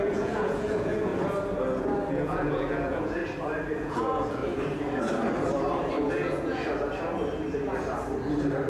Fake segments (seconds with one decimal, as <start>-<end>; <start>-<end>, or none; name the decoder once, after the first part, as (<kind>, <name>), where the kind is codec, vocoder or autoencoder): 0.0-1.1 (vocoder, Vocos); 2.1-3.2; 3.8-4.4; 6.1-6.6